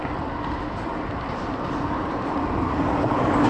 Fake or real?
real